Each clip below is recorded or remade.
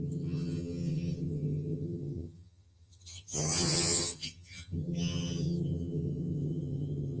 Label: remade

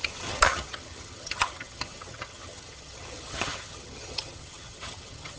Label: remade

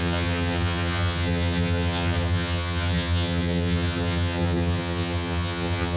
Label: remade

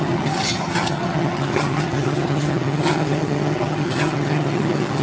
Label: remade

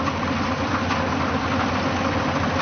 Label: recorded